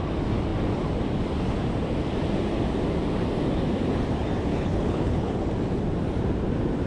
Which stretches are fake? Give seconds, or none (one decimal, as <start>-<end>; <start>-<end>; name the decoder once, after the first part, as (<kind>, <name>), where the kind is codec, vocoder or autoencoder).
4.5-5.4 (codec, HILCodec)